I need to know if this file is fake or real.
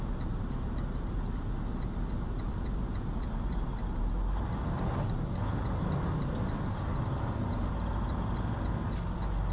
real